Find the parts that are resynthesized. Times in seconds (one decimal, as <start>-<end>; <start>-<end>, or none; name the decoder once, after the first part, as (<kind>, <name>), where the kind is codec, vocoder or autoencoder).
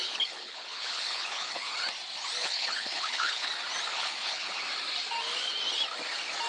0.0-1.7 (codec, HILCodec); 2.4-3.5; 3.9-4.6